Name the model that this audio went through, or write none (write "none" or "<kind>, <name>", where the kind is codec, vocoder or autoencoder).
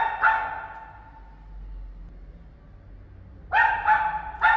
none